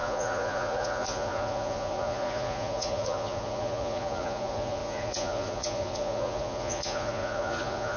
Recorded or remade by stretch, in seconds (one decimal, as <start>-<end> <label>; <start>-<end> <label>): 0.0-8.0 remade